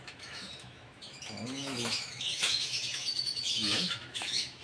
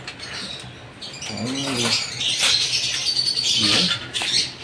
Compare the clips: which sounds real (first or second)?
second